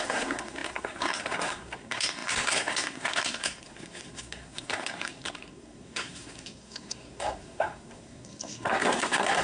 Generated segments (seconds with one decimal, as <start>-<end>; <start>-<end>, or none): 0.0-9.4